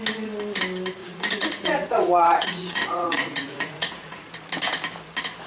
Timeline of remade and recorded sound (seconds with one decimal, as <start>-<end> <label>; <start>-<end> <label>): 0.0-1.0 recorded; 1.0-4.3 remade; 4.3-5.5 recorded